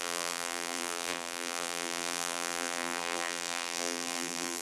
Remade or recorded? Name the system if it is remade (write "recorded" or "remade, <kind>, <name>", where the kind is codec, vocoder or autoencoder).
remade, vocoder, BigVGAN v2